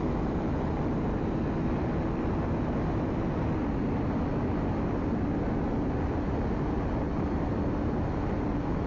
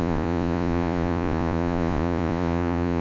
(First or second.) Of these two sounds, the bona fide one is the first